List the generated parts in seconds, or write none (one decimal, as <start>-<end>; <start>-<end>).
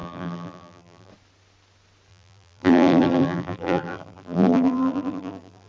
0.0-1.1; 2.1-5.7